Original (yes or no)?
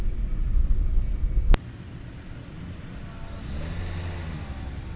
yes